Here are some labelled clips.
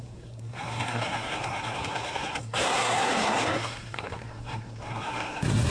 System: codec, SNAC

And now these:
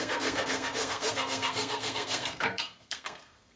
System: codec, SNAC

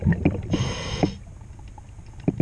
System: none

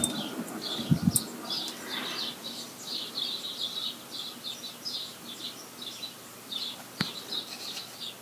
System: none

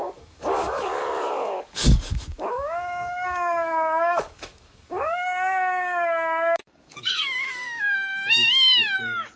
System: codec, DAC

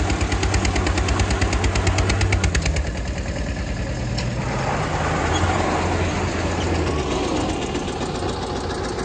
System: none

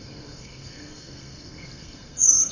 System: codec, SNAC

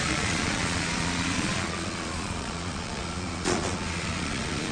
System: vocoder, Vocos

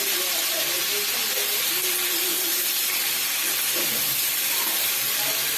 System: none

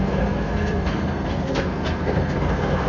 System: codec, SNAC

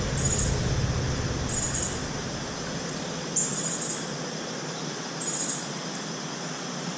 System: none